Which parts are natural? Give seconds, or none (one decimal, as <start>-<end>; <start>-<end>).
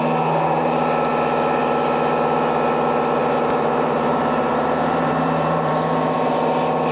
0.0-3.2; 5.7-6.9